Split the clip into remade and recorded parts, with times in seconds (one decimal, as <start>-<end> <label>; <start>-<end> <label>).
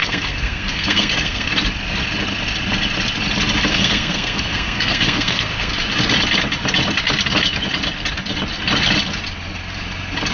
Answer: 0.0-1.5 remade; 1.5-3.7 recorded; 3.7-5.7 remade; 5.7-10.3 recorded